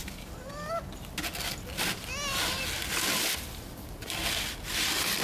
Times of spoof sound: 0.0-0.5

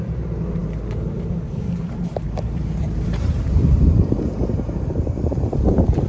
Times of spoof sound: 0.0-6.1

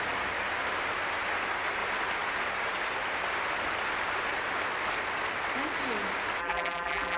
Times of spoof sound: 6.4-7.2

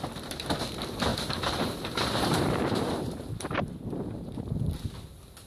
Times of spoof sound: 1.1-4.4

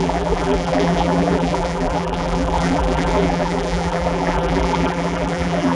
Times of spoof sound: 0.0-5.7

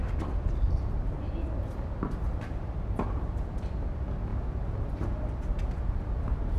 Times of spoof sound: none

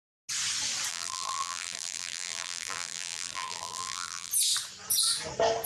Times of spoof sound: 0.9-4.3